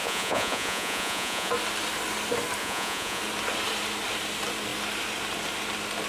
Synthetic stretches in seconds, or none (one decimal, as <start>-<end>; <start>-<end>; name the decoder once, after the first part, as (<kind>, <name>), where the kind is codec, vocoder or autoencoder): 0.0-1.5 (vocoder, Vocos); 2.6-3.2